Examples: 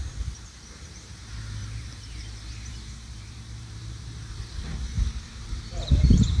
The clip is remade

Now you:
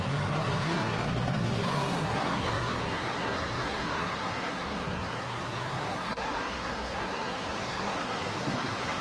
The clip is remade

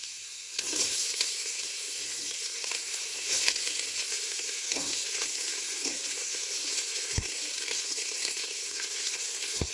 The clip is remade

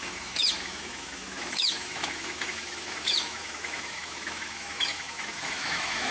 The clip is remade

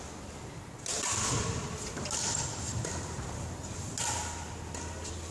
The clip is recorded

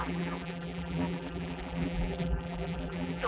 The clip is remade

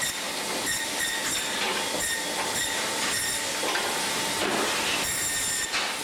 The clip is recorded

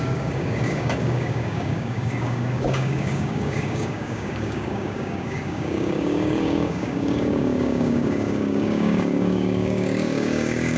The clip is remade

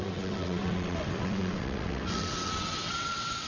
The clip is remade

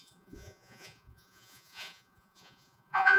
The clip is remade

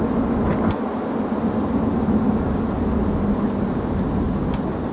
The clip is recorded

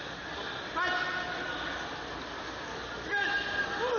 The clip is recorded